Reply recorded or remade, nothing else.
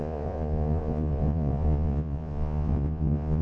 remade